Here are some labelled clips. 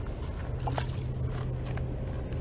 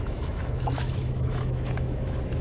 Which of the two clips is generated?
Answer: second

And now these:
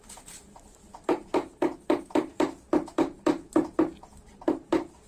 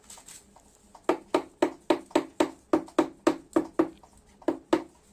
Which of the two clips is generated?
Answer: first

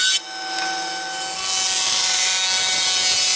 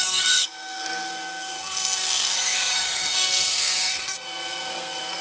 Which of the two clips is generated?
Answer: second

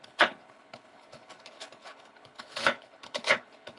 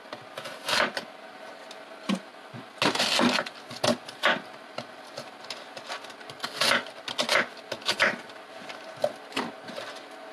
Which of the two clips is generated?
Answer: first